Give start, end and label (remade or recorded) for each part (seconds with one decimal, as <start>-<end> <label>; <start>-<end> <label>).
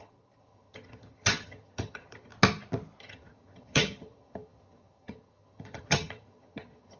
0.0-2.3 remade; 2.3-3.0 recorded; 3.0-7.0 remade